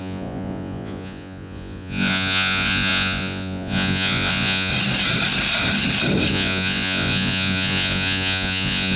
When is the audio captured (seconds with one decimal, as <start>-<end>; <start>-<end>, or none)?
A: 4.7-6.3